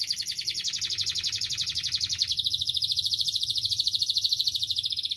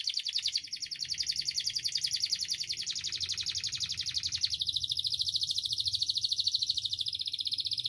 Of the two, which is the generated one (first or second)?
first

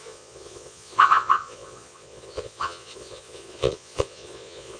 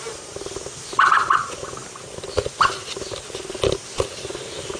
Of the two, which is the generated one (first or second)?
first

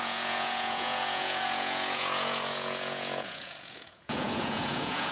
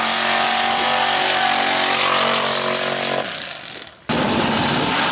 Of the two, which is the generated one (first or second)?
first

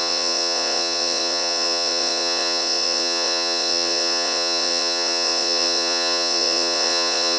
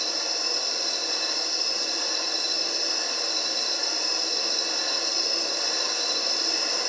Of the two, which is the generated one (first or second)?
first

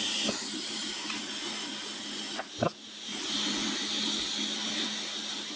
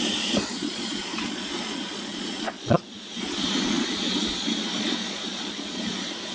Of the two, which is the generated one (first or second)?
second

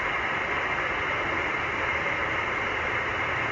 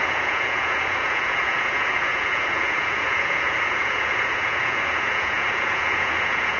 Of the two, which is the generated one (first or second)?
second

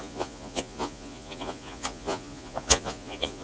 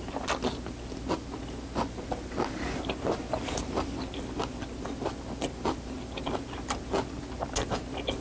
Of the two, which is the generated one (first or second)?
first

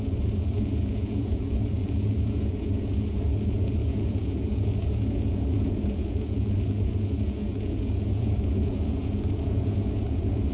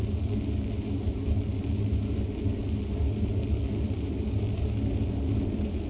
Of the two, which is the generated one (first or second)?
first